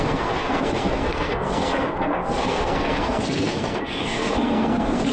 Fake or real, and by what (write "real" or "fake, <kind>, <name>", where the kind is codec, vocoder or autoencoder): fake, codec, SNAC